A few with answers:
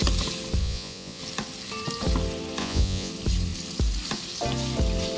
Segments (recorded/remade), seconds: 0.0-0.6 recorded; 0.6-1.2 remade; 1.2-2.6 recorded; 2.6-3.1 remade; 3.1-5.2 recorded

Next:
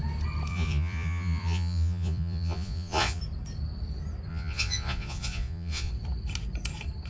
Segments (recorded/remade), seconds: 0.0-0.5 recorded; 0.5-3.2 remade; 3.2-4.3 recorded; 4.3-5.9 remade; 5.9-7.1 recorded

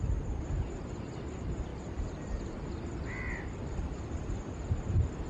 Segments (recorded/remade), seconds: 0.0-5.3 recorded